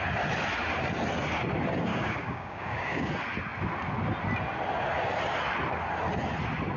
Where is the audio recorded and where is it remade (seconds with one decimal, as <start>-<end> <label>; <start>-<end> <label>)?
0.0-1.9 recorded; 1.9-3.1 remade; 3.1-6.8 recorded